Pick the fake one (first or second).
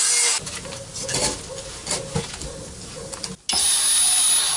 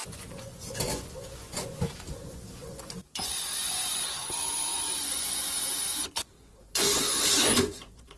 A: second